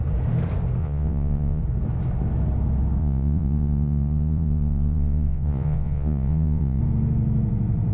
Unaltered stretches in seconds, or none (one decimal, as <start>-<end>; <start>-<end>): 0.0-0.8; 1.6-3.0; 6.8-7.9